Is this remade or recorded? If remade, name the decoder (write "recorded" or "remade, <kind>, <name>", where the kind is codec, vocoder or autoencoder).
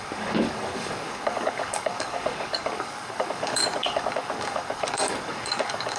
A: remade, codec, DAC